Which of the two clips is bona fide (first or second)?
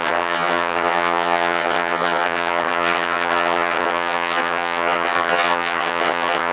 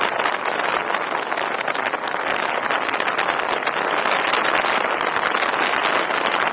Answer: second